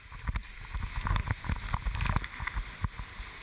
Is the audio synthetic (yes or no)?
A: no